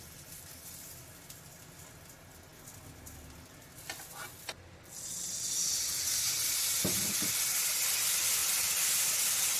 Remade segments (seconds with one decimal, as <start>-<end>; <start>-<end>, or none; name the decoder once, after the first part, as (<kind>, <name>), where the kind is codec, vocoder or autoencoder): none

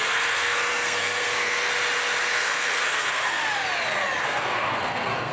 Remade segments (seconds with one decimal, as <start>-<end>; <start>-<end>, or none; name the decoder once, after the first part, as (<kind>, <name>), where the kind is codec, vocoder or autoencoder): 0.0-1.7 (codec, SNAC); 2.3-3.4; 4.2-5.3

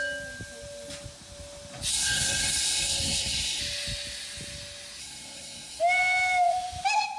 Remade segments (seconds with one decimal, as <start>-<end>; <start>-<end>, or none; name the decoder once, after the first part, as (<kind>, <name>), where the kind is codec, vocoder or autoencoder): 1.9-3.6 (codec, SNAC); 5.0-5.8

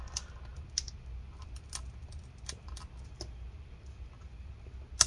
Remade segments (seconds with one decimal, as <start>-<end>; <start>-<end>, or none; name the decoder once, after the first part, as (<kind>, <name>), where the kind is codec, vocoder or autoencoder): none

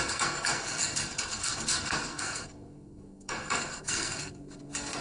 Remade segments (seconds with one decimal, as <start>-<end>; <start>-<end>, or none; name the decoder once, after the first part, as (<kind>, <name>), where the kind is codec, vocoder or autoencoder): 0.0-5.0 (codec, SNAC)

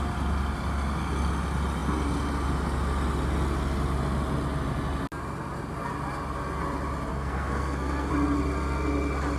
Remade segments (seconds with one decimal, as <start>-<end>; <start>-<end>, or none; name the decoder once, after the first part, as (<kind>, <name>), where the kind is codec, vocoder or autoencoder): 7.1-8.1 (codec, SNAC)

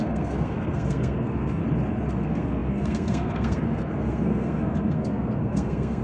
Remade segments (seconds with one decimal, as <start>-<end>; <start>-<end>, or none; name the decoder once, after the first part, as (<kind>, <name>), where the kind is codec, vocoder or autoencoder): 0.0-1.6 (codec, SNAC); 2.1-6.0

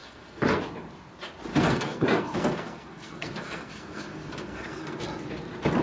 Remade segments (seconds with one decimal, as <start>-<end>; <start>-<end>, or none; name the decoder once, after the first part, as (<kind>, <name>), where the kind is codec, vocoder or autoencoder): 0.0-0.6 (codec, SNAC); 1.5-5.0